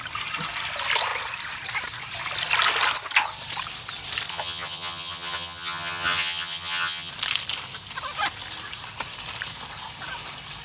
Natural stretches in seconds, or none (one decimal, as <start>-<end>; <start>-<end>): 0.0-4.3; 7.1-10.6